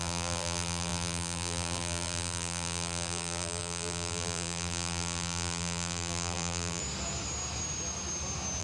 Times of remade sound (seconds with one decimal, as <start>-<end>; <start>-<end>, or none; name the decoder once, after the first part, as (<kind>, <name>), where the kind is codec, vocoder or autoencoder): 0.0-6.8 (vocoder, BigVGAN v2)